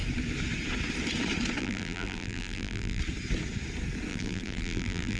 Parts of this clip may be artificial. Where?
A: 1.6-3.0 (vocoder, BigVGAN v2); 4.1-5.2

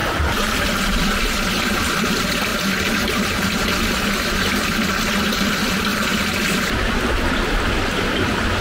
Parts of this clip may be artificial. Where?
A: 2.5-3.9 (vocoder, BigVGAN v2); 5.9-8.6